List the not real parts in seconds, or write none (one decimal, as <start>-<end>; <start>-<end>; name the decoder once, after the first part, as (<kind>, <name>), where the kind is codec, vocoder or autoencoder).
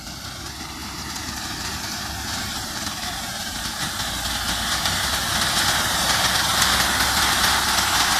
0.8-4.1 (vocoder, BigVGAN v2)